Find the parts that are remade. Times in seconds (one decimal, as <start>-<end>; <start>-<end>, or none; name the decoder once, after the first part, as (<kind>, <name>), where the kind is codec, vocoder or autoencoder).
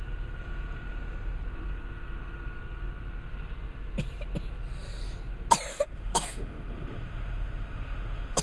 5.7-8.4 (autoencoder, DAC-VAE)